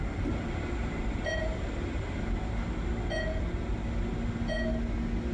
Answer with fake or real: real